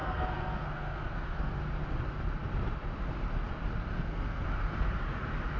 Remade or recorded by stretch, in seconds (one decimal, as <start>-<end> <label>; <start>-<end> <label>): 0.0-1.6 remade; 1.6-3.9 recorded; 3.9-4.8 remade; 4.8-5.6 recorded